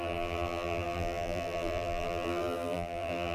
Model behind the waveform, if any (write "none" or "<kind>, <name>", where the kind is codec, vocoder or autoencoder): vocoder, BigVGAN v2